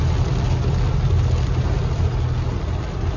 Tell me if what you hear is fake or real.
real